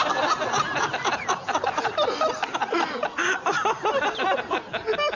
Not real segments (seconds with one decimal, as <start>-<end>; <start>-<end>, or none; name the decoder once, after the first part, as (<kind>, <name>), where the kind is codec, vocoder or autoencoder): none